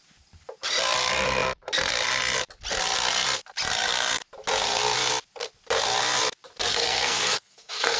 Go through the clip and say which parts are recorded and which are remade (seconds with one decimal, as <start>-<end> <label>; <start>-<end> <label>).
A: 0.0-6.7 recorded; 6.7-8.0 remade